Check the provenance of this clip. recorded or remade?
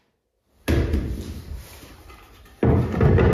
recorded